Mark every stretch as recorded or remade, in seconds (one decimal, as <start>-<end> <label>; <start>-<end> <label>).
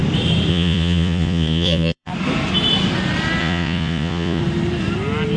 0.0-0.5 recorded; 0.5-2.1 remade; 2.1-3.4 recorded; 3.4-4.4 remade; 4.4-5.4 recorded